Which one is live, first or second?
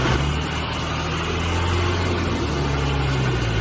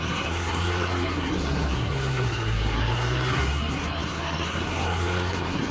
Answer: first